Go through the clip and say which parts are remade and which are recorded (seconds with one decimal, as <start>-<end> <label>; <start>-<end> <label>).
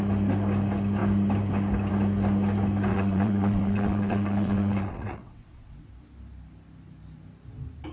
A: 0.0-2.9 recorded; 2.9-5.9 remade; 5.9-7.9 recorded